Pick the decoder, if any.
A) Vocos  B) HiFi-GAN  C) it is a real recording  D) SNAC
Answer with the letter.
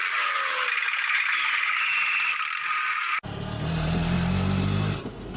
C